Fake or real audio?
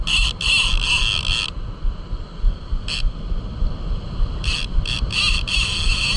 real